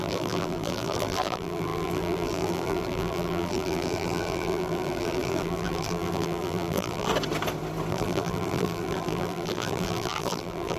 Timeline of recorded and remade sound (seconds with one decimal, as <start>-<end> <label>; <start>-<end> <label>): 0.0-7.1 remade; 7.1-7.9 recorded; 7.9-10.8 remade